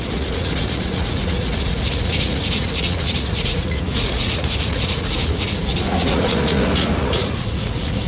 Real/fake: fake